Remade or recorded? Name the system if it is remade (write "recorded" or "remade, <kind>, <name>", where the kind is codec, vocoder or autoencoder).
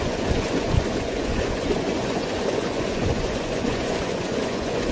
remade, vocoder, Vocos